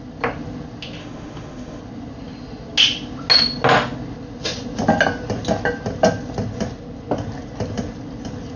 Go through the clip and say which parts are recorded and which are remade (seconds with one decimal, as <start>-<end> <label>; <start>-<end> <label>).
0.0-1.0 recorded; 1.0-1.8 remade; 1.8-8.6 recorded